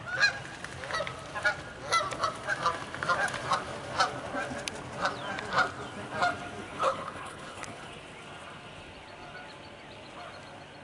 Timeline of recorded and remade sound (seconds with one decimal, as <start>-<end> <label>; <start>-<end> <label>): 0.0-6.7 recorded; 6.7-7.9 remade; 7.9-10.8 recorded